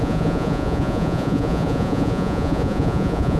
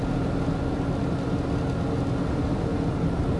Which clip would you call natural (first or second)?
second